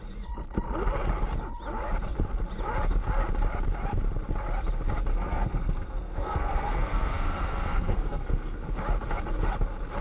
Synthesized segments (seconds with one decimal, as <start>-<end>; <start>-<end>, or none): 5.1-8.6